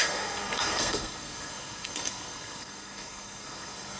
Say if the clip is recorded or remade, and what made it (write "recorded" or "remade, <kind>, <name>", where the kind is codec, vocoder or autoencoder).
remade, codec, SNAC